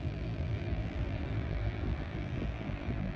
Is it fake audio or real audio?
fake